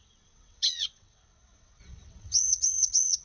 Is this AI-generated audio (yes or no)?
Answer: yes